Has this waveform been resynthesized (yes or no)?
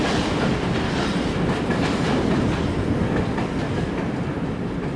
no